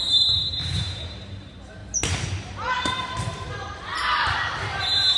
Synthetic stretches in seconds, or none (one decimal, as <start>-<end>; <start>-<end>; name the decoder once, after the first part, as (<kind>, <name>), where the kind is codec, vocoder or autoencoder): 0.0-1.8 (vocoder, BigVGAN v2); 2.7-5.2